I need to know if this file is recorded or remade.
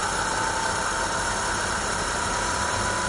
recorded